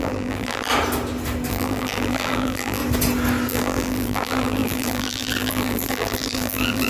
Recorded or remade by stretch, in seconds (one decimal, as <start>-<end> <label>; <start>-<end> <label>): 0.0-0.7 remade; 0.7-1.5 recorded; 1.5-2.8 remade; 2.8-3.5 recorded; 3.5-6.9 remade